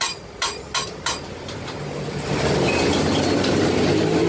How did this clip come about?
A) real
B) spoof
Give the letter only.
B